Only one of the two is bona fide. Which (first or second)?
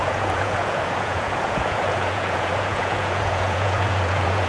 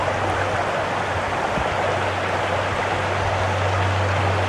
second